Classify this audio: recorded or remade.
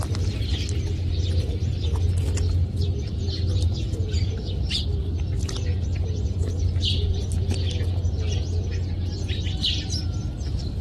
recorded